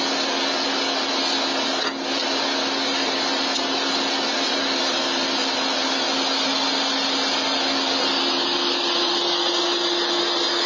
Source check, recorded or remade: recorded